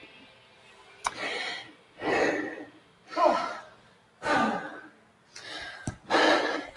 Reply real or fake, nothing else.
real